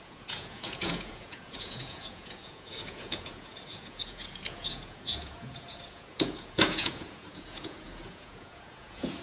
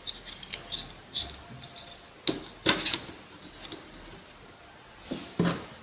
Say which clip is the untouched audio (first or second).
second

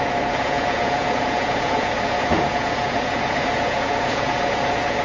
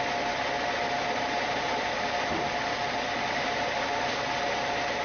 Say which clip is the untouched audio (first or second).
second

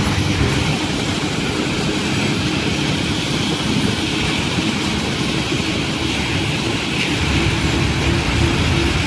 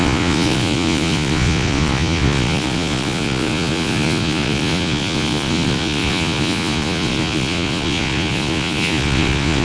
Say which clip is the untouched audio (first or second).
first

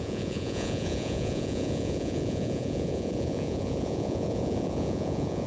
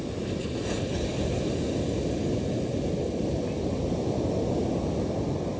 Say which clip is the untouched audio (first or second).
second